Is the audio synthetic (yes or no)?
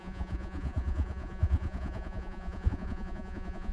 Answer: yes